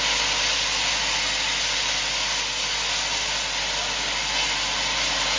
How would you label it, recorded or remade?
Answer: recorded